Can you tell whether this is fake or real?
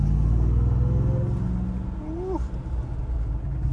real